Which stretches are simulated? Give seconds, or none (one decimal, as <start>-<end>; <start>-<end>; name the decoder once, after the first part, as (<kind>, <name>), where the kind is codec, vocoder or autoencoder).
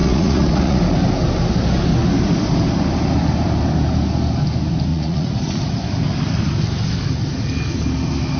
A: 0.0-0.8 (vocoder, Vocos); 4.9-5.6